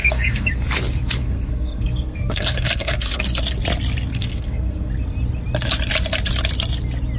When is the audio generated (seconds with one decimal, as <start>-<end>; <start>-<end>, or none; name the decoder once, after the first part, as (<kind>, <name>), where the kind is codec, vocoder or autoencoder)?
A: 0.0-0.5 (codec, SNAC); 1.2-3.4; 4.1-4.9

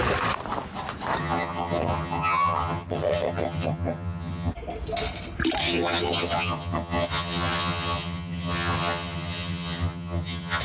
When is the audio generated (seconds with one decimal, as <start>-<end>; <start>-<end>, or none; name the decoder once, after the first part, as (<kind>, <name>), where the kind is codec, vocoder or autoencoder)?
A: 1.2-4.5 (vocoder, HiFi-GAN); 5.6-10.6

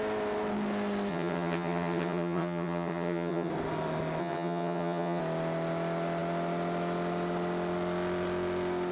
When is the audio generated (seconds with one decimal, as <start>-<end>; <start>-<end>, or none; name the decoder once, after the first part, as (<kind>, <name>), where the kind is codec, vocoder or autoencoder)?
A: 1.1-3.5 (vocoder, HiFi-GAN); 4.2-5.2

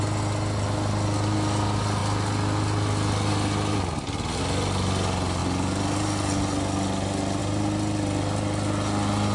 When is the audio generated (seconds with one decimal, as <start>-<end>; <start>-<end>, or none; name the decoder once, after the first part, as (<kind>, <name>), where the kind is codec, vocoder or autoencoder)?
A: none